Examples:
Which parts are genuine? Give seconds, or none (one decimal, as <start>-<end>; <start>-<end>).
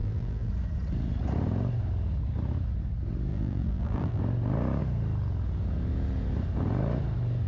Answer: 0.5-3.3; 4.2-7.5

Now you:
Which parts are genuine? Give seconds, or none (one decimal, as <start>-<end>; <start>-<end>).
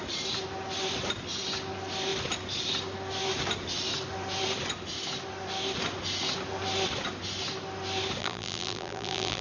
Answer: 0.0-8.2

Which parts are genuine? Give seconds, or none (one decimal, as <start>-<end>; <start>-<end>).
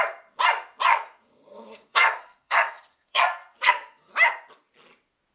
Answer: 0.0-0.9; 4.1-5.3